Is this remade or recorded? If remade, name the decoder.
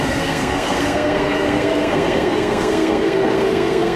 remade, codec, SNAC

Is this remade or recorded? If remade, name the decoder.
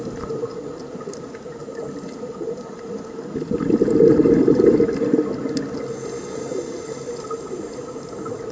recorded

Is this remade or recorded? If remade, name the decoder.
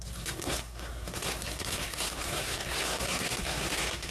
remade, codec, SNAC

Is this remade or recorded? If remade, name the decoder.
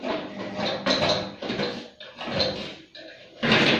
recorded